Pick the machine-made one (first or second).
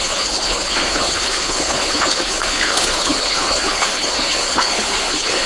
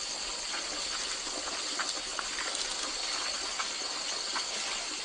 first